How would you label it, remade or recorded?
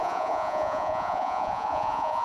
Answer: remade